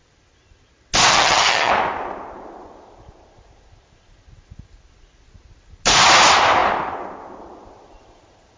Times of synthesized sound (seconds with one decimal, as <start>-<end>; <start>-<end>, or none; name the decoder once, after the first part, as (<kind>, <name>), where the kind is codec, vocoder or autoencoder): 1.1-1.7 (vocoder, HiFi-GAN)